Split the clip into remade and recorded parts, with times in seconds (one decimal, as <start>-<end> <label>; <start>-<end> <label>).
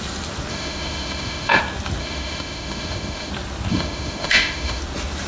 0.0-0.5 recorded; 0.5-1.6 remade; 1.6-2.0 recorded; 2.0-3.3 remade; 3.3-3.7 recorded; 3.7-4.8 remade; 4.8-5.3 recorded